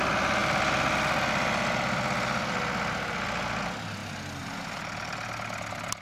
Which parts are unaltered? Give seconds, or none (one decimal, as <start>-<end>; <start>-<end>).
0.0-6.0